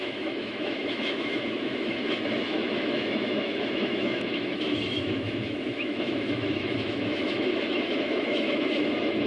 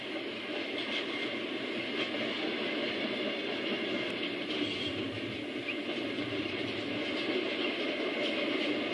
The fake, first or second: first